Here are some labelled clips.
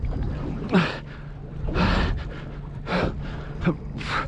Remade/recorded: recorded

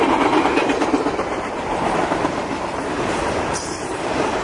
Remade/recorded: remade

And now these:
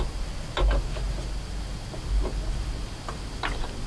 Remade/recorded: recorded